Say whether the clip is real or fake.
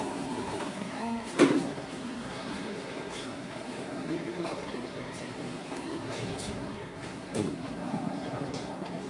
fake